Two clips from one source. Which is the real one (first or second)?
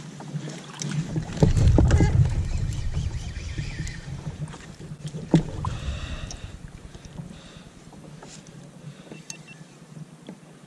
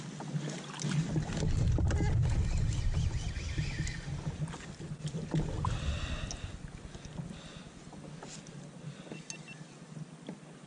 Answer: second